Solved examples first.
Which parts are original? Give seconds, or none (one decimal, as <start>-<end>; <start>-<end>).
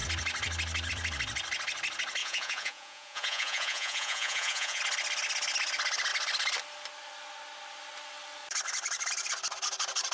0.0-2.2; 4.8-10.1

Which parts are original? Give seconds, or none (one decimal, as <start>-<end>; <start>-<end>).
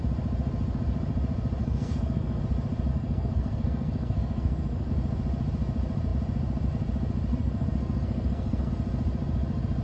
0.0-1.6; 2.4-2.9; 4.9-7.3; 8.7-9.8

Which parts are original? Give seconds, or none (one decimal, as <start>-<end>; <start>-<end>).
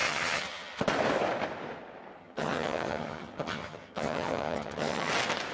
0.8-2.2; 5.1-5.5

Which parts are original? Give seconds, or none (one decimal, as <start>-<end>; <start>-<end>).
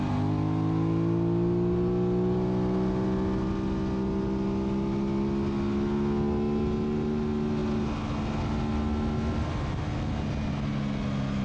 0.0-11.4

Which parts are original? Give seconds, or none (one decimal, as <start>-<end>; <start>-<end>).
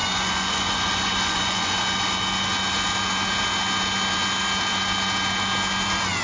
1.8-6.2